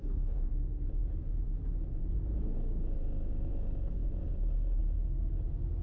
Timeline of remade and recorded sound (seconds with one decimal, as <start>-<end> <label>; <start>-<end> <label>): 0.0-0.5 remade; 0.5-5.8 recorded